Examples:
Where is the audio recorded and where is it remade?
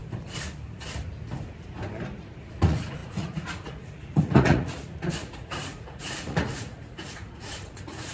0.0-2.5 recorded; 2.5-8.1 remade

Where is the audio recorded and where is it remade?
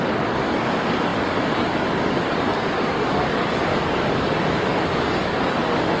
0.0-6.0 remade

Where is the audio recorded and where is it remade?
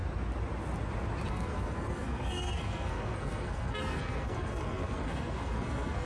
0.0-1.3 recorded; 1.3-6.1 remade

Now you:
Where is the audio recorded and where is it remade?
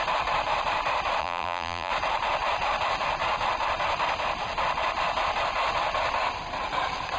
0.0-1.2 recorded; 1.2-1.9 remade; 1.9-7.2 recorded